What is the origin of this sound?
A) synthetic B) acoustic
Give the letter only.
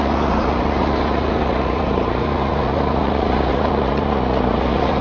A